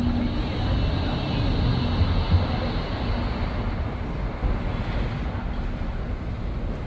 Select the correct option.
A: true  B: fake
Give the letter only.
A